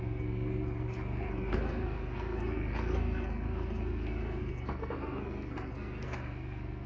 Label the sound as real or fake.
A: fake